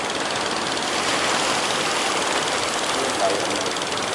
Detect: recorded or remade recorded